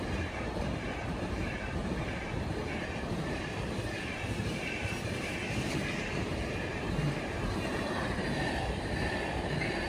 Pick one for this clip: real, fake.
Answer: fake